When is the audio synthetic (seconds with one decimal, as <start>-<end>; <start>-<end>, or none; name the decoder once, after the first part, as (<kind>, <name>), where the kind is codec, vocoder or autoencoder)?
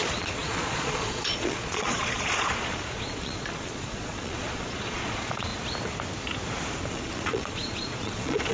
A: 0.0-5.5 (vocoder, Vocos); 6.9-8.5